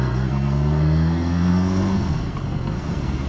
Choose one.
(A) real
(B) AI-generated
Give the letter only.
B